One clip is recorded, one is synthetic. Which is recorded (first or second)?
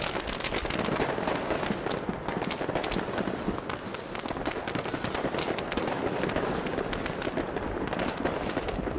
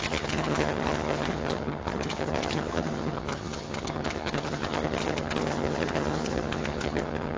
first